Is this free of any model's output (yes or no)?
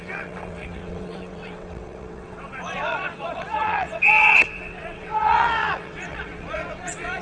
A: no